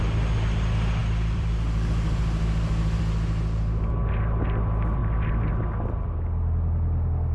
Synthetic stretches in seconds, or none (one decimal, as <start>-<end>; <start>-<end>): 1.0-3.0; 5.0-5.5